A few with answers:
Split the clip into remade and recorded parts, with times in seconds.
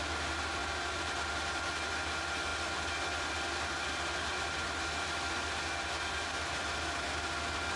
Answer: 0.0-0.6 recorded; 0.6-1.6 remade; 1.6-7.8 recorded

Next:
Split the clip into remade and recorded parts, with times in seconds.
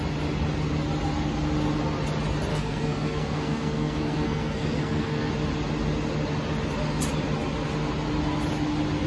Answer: 0.0-2.5 recorded; 2.5-5.3 remade; 5.3-9.1 recorded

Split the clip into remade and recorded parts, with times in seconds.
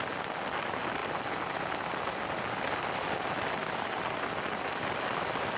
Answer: 0.0-5.6 recorded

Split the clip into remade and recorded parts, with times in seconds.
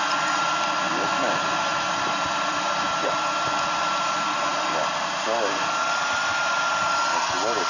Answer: 0.0-7.7 recorded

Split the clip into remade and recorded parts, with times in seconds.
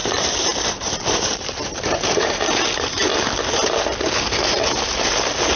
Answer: 0.0-3.4 remade; 3.4-5.6 recorded